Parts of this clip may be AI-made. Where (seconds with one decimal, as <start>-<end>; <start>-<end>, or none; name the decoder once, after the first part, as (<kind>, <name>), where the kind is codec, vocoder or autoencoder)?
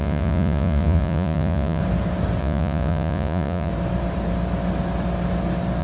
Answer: 0.0-1.8 (vocoder, Vocos); 2.4-3.7